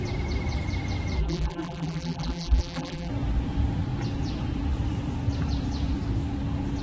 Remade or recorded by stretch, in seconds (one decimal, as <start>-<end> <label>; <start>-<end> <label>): 0.0-1.2 recorded; 1.2-3.1 remade; 3.1-6.8 recorded